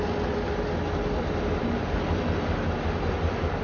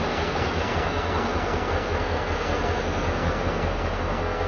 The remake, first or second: second